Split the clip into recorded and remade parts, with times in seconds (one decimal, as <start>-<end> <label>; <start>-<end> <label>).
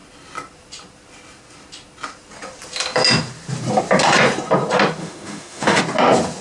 0.0-5.0 recorded; 5.0-5.8 remade; 5.8-6.4 recorded